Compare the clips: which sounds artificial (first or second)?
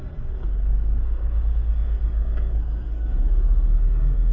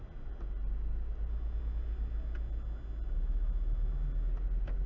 first